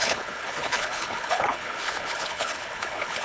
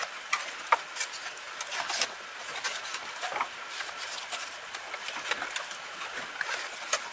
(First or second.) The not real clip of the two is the first